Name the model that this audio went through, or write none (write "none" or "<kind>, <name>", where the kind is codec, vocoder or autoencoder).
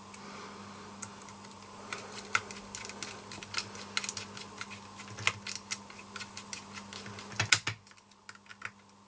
none